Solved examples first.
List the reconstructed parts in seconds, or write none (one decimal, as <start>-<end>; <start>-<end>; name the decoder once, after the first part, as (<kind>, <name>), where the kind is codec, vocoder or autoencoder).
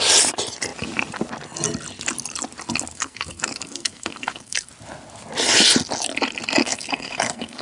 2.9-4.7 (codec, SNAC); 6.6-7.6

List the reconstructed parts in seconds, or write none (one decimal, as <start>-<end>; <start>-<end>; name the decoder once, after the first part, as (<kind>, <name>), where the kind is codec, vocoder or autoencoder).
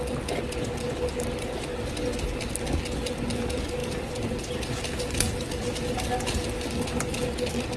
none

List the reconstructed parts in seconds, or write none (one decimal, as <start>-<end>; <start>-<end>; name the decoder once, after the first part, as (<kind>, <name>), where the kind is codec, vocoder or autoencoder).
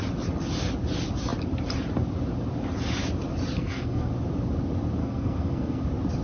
3.6-4.1 (codec, SNAC); 5.0-5.8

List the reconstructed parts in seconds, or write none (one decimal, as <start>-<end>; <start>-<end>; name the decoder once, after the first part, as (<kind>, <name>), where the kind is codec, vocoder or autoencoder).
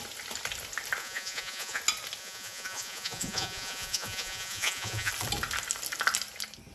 1.0-1.8 (vocoder, Vocos); 2.2-5.1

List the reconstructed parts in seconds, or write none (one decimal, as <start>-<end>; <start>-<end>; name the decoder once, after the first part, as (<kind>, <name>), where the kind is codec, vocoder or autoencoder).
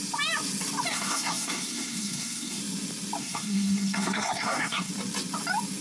0.9-2.6 (codec, SNAC); 3.2-4.9